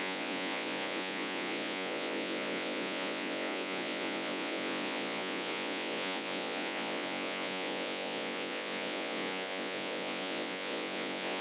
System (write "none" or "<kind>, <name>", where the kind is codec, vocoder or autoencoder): vocoder, Vocos